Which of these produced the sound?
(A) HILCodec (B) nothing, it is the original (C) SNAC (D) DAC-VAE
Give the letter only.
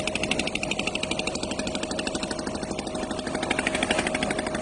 B